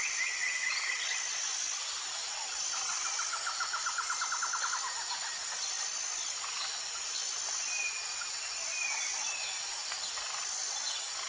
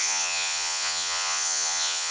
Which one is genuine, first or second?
first